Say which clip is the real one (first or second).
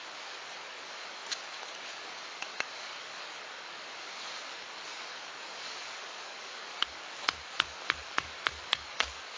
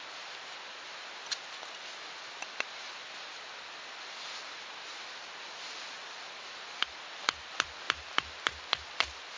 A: second